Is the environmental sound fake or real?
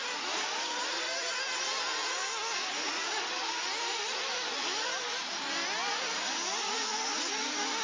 fake